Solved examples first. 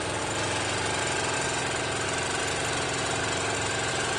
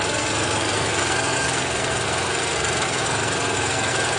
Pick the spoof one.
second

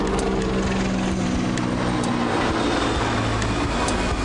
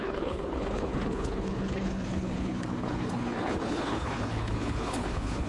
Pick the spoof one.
second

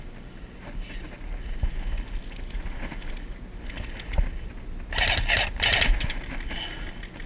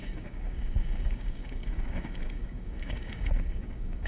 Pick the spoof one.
second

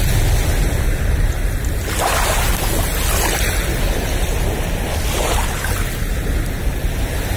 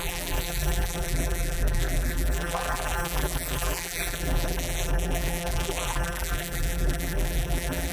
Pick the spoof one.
second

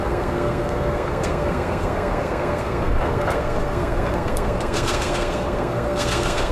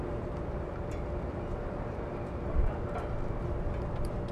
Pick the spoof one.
first